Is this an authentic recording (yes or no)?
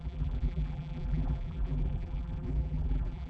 no